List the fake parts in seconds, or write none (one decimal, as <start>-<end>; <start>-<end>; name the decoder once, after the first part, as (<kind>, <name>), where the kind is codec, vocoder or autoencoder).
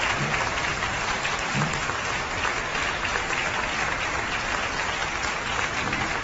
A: 0.7-1.8 (vocoder, BigVGAN v2); 2.7-3.2